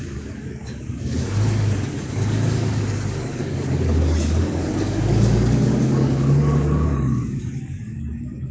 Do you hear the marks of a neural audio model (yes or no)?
yes